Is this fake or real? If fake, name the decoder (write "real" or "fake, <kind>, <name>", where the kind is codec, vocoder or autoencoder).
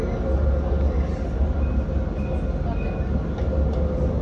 real